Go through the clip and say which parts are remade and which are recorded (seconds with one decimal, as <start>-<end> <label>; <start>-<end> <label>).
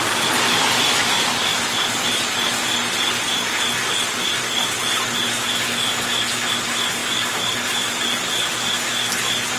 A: 0.0-1.5 recorded; 1.5-2.7 remade; 2.7-7.0 recorded; 7.0-8.7 remade; 8.7-9.6 recorded